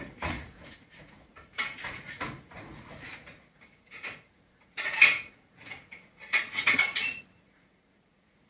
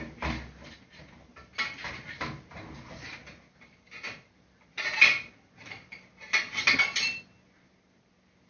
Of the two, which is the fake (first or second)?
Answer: first